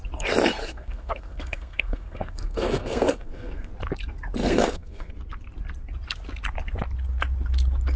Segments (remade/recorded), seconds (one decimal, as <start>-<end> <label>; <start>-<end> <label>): 0.0-0.6 recorded; 0.6-3.7 remade; 3.7-4.4 recorded; 4.4-5.1 remade; 5.1-8.0 recorded